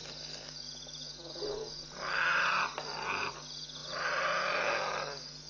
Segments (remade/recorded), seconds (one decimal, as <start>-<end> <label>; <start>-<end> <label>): 0.0-5.5 recorded